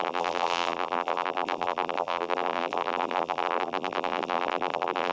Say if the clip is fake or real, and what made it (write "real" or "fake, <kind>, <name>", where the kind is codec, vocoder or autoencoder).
fake, vocoder, BigVGAN v2